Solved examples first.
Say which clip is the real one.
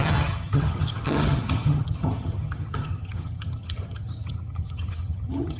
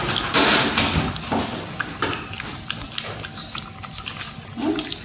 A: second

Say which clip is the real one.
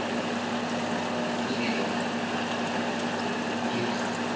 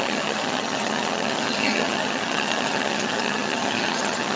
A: first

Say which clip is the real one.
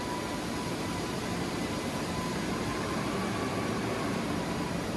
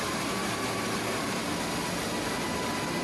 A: second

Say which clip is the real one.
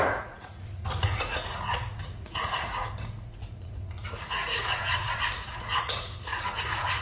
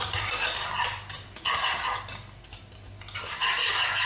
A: second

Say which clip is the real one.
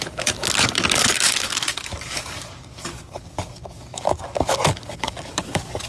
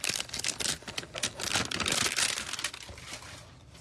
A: second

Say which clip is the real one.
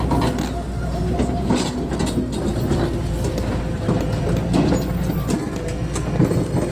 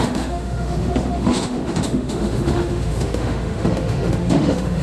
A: first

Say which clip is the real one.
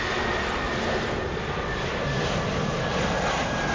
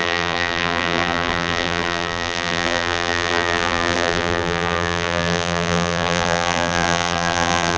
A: first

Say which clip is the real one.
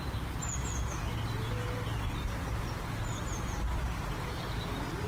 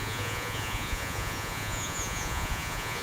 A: first